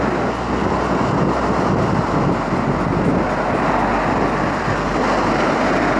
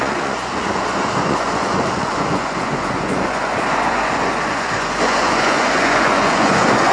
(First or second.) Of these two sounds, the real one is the first